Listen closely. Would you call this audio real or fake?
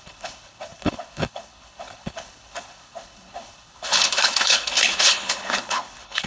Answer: fake